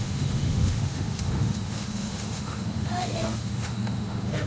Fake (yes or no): yes